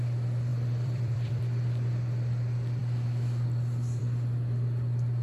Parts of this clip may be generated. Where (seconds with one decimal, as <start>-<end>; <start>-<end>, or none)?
0.5-1.4